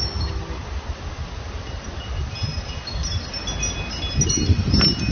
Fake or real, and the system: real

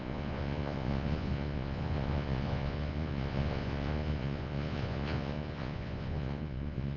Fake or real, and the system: fake, vocoder, Vocos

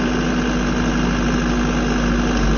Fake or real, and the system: real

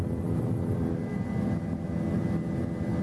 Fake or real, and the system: real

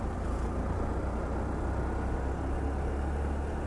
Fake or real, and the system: real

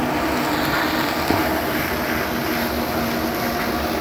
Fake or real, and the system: real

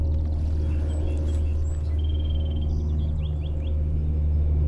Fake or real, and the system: real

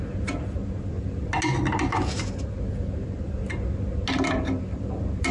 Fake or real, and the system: real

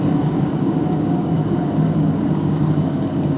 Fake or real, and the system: fake, codec, DAC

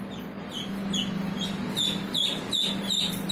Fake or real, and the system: real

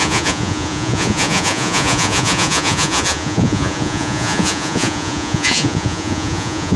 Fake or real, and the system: fake, vocoder, Vocos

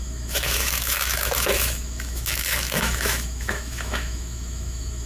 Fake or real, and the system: fake, autoencoder, DAC-VAE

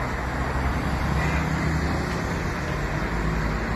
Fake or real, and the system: real